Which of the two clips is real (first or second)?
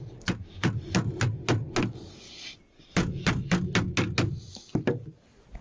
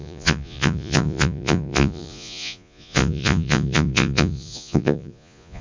first